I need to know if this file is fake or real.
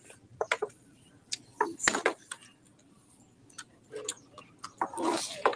real